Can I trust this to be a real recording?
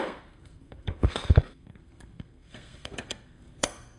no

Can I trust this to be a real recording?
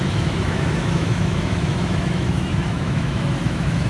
no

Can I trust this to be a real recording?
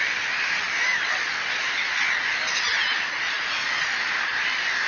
yes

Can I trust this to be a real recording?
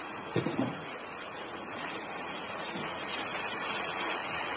no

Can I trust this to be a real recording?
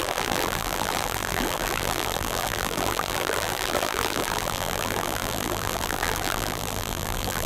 no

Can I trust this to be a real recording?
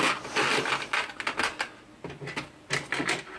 yes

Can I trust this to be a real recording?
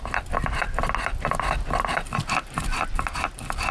yes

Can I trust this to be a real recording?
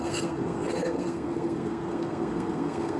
no